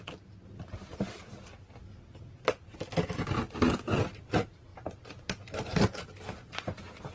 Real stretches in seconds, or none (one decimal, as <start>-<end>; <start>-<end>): 0.0-7.1